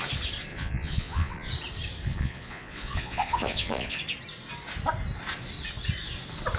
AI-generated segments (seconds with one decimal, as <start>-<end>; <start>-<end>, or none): 0.5-1.5; 2.1-4.0